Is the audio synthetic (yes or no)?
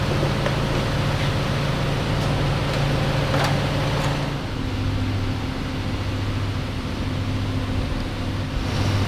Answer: no